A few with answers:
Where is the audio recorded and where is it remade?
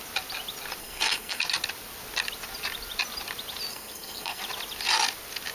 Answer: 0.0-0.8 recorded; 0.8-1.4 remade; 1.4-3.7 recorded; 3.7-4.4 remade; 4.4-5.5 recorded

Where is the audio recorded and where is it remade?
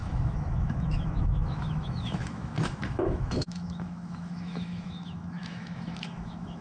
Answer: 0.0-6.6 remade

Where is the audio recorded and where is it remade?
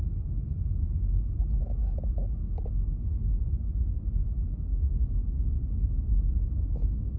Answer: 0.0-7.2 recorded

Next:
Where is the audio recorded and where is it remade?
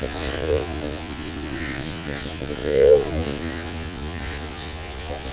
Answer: 0.0-5.3 remade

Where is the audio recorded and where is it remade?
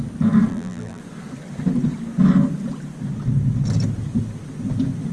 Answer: 0.0-0.5 recorded; 0.5-1.0 remade; 1.0-5.1 recorded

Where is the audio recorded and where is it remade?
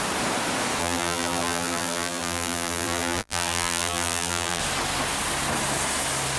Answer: 0.0-0.8 recorded; 0.8-4.6 remade; 4.6-6.4 recorded